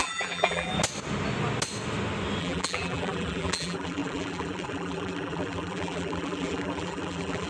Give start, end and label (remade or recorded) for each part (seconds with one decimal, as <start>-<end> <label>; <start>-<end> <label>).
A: 0.0-0.7 remade; 0.7-2.4 recorded; 2.4-7.5 remade

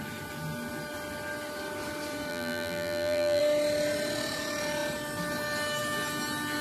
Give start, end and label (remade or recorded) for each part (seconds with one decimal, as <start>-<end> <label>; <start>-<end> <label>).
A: 0.0-2.3 recorded; 2.3-3.4 remade; 3.4-6.6 recorded

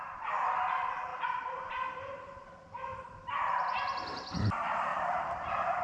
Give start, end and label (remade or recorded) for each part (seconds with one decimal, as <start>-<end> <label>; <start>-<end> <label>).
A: 0.0-2.9 remade; 2.9-4.3 recorded; 4.3-5.8 remade

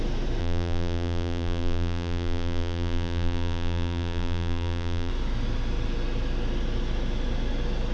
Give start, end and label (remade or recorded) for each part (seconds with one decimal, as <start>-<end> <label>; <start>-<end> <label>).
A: 0.0-0.4 recorded; 0.4-5.1 remade; 5.1-7.9 recorded

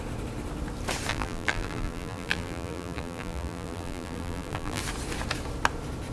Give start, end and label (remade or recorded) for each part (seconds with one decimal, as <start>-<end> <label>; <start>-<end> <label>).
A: 0.0-1.1 recorded; 1.1-4.8 remade; 4.8-6.1 recorded

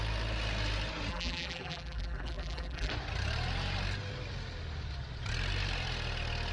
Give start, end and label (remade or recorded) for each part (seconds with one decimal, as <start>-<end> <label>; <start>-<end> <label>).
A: 0.0-1.1 recorded; 1.1-2.9 remade; 2.9-6.5 recorded